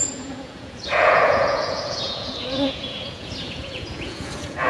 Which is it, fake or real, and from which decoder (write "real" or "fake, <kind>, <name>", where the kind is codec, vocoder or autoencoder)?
fake, vocoder, Vocos